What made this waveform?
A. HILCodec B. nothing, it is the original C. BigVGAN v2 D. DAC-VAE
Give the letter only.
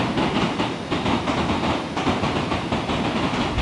C